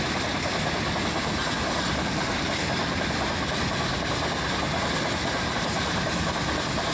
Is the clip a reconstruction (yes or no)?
no